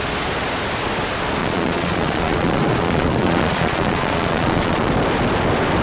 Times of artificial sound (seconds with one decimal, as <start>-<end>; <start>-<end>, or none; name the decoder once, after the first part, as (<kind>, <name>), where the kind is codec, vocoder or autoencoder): 1.4-4.9 (vocoder, Vocos)

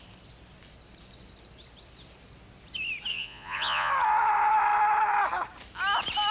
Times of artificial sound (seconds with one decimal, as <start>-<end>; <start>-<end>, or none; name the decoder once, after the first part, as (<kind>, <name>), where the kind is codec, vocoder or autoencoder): 3.1-3.9 (vocoder, Vocos)